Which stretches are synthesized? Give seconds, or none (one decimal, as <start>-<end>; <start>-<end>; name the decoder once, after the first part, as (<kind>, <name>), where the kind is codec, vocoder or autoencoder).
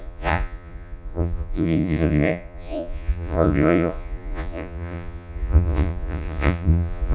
0.0-7.1 (vocoder, Vocos)